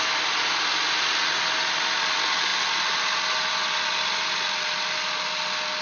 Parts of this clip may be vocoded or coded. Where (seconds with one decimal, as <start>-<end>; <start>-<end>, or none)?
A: none